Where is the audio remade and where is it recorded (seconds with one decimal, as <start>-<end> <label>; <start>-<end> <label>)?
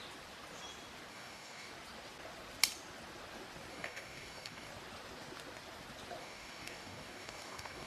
0.0-1.1 recorded; 1.1-1.7 remade; 1.7-3.7 recorded; 3.7-4.7 remade; 4.7-6.2 recorded; 6.2-7.9 remade